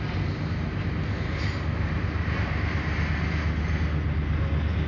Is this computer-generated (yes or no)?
no